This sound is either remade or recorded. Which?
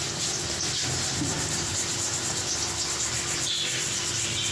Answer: recorded